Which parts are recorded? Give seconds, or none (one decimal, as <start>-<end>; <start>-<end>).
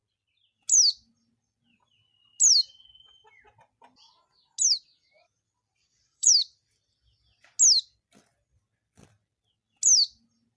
0.0-5.8; 6.3-10.6